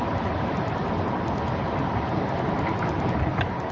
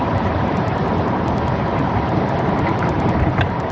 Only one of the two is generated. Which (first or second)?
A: second